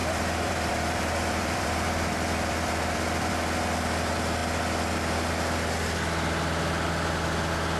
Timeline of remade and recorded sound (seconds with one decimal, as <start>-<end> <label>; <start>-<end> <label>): 0.0-3.3 remade; 3.3-7.8 recorded